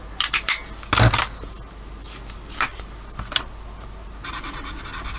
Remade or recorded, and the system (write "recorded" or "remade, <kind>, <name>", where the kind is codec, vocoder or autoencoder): recorded